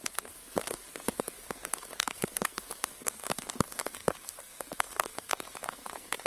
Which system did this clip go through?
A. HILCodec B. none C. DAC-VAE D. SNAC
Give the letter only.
D